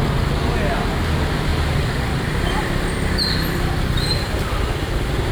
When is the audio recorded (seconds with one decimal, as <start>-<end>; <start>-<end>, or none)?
0.0-1.5; 4.7-5.3